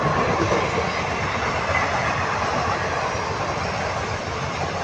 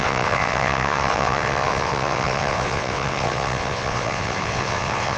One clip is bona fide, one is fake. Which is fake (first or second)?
second